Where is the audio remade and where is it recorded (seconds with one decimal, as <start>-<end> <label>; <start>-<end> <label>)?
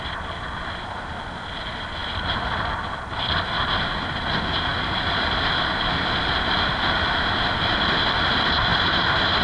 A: 0.0-8.7 recorded; 8.7-9.4 remade